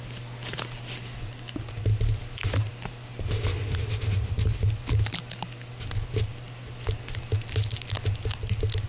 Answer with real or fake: real